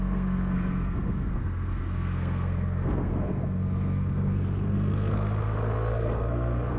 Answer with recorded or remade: remade